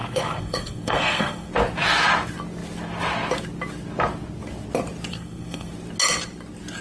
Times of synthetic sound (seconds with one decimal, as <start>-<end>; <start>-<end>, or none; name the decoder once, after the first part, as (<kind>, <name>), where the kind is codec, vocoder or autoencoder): 0.0-1.5 (codec, SNAC); 5.1-5.7